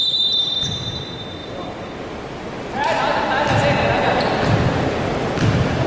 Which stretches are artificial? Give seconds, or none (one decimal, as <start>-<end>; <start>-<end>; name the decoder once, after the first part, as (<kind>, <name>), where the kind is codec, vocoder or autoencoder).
1.4-2.7 (vocoder, BigVGAN v2)